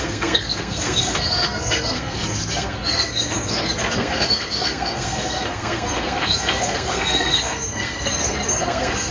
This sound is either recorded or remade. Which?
remade